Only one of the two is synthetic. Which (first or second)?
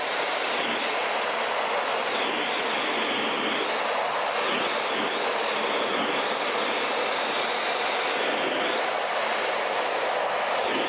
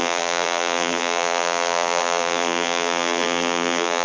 second